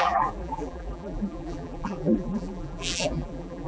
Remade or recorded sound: remade